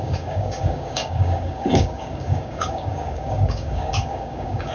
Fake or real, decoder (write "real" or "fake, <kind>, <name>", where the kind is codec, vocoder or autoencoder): fake, codec, DAC